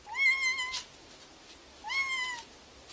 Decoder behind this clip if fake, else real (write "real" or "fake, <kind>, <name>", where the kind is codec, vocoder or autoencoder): real